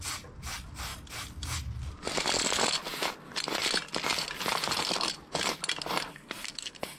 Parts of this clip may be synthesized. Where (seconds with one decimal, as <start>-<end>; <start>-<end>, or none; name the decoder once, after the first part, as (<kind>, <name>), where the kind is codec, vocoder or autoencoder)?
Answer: 6.1-7.0 (codec, SNAC)